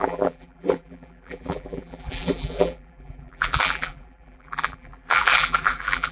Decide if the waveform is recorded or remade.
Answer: remade